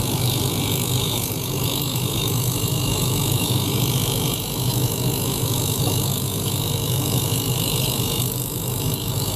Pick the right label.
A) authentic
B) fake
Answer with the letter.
B